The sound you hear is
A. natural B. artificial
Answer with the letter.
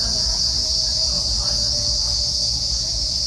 B